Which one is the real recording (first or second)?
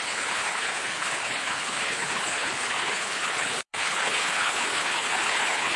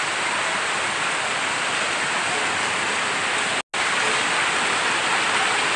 second